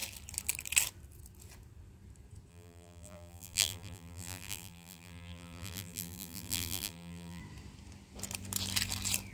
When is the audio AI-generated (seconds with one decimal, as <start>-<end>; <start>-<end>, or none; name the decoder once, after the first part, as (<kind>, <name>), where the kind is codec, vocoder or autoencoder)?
2.5-7.4 (vocoder, BigVGAN v2)